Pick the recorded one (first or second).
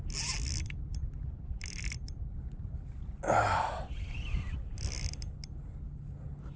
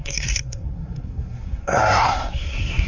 first